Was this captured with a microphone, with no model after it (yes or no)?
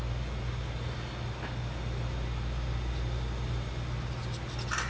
yes